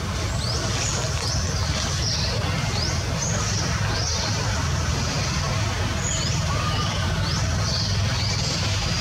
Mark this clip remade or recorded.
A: recorded